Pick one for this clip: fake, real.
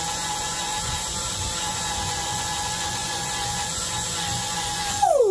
fake